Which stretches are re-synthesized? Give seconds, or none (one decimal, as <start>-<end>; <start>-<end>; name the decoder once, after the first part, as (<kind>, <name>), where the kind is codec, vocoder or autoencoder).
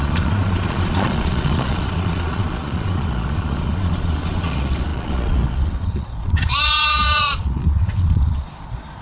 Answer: 0.0-9.0 (vocoder, Vocos)